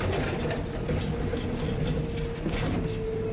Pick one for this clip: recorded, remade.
recorded